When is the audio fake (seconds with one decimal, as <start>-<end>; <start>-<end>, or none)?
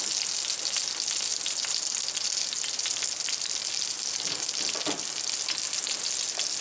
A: 1.3-5.3